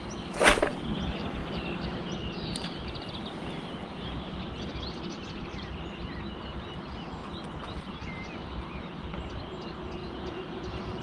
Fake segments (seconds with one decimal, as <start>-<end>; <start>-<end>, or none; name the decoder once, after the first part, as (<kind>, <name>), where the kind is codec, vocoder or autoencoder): 10.0-11.0 (vocoder, Vocos)